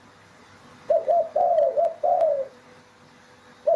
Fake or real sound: real